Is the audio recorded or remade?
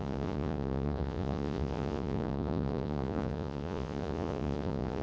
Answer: remade